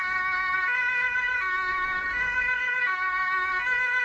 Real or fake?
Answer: fake